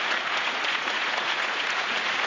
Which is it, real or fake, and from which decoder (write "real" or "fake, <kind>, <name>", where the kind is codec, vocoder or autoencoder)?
fake, vocoder, Vocos